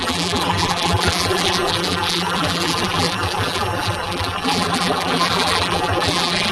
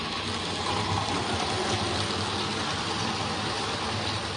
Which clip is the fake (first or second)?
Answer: first